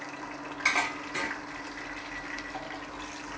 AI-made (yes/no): no